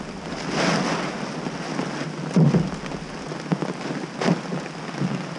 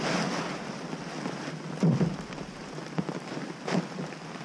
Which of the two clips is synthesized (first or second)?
second